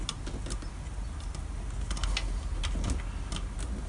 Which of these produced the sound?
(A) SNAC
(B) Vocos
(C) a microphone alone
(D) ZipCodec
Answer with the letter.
C